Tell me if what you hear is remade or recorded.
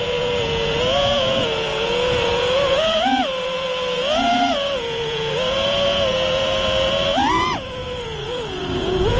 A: remade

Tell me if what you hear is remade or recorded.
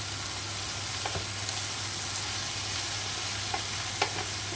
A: recorded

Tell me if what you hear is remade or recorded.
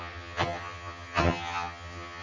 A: remade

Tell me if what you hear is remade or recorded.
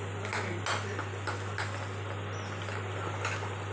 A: recorded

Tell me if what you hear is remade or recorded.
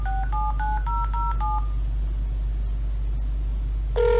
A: recorded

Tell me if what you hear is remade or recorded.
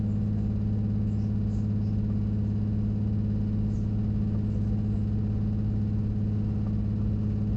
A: recorded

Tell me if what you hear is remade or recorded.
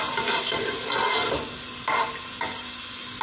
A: recorded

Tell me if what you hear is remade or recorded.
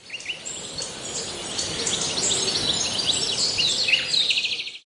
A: recorded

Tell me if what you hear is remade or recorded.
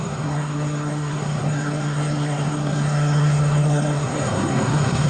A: remade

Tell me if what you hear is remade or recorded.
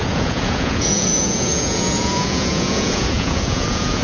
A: remade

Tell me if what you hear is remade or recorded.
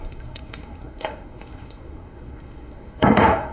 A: remade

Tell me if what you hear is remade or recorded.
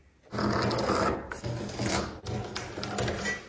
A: recorded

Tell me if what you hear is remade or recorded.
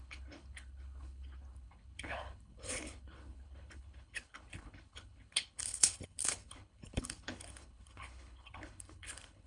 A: remade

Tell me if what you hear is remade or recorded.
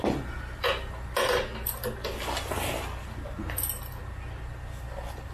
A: recorded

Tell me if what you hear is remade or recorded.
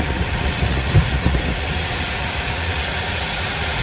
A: remade